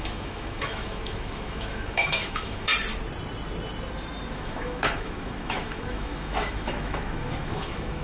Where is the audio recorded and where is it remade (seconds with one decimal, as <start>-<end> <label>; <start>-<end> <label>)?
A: 0.0-2.7 remade; 2.7-4.3 recorded; 4.3-8.0 remade